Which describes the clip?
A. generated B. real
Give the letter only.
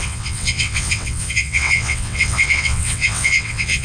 A